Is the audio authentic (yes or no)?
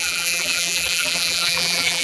no